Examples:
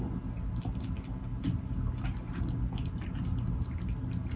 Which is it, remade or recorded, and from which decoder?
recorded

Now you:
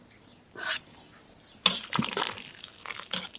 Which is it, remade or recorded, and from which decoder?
recorded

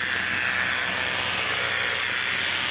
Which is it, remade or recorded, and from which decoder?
recorded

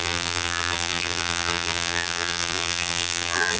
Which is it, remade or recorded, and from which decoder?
remade, vocoder, BigVGAN v2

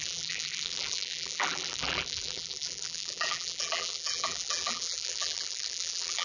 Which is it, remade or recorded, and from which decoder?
remade, vocoder, BigVGAN v2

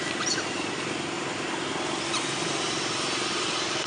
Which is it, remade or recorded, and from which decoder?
remade, vocoder, BigVGAN v2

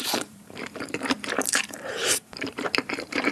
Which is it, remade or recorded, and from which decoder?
remade, vocoder, BigVGAN v2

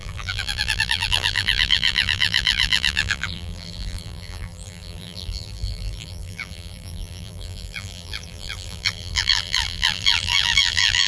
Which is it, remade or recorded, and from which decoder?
remade, vocoder, BigVGAN v2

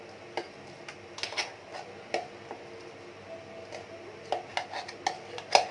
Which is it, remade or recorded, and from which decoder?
recorded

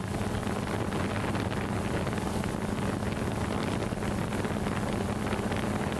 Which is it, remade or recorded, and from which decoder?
recorded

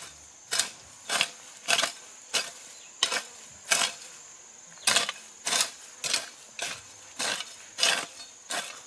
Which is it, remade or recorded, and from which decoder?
recorded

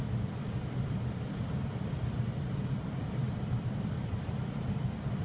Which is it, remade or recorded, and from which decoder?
remade, vocoder, BigVGAN v2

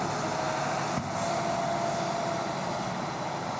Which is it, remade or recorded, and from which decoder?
recorded